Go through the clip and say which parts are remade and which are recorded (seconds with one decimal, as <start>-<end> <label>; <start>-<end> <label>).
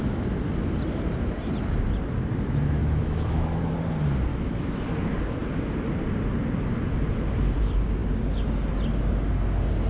0.0-2.8 recorded; 2.8-3.7 remade; 3.7-4.3 recorded; 4.3-4.8 remade; 4.8-9.9 recorded